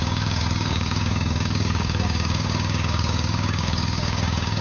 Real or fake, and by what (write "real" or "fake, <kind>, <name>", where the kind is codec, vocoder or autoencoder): fake, codec, DAC